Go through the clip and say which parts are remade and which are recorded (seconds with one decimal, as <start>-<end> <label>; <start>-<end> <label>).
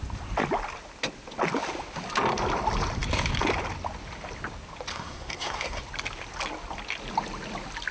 0.0-4.9 recorded; 4.9-5.8 remade; 5.8-7.9 recorded